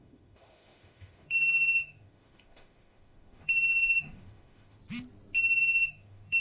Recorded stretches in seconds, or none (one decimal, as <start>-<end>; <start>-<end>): 4.8-5.6